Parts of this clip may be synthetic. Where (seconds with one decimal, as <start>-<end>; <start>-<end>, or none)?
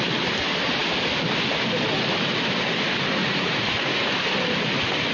3.2-4.1